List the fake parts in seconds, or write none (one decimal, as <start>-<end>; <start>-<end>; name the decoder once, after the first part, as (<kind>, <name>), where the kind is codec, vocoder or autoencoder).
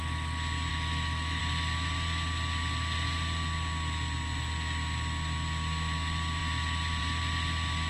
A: 0.7-1.4 (autoencoder, DAC-VAE)